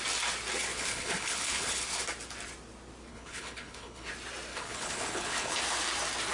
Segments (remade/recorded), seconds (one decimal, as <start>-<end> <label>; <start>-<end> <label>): 0.0-0.7 recorded; 0.7-1.8 remade; 1.8-3.1 recorded; 3.1-4.1 remade; 4.1-4.5 recorded; 4.5-5.6 remade; 5.6-6.3 recorded